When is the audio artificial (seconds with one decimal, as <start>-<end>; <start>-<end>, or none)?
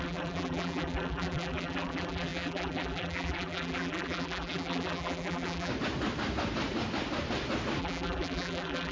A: 0.0-5.7; 7.8-8.9